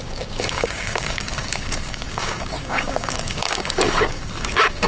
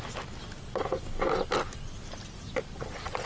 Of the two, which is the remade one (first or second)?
first